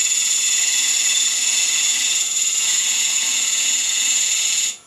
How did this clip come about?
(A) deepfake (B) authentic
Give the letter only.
A